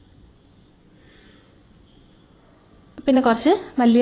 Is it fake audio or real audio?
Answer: fake